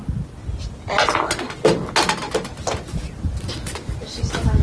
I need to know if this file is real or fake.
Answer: real